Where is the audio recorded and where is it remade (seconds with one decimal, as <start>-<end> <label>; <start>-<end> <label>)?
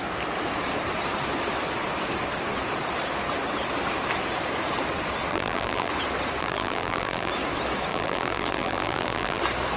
0.0-5.3 recorded; 5.3-5.9 remade; 5.9-6.4 recorded; 6.4-7.3 remade; 7.3-7.9 recorded; 7.9-9.4 remade; 9.4-9.8 recorded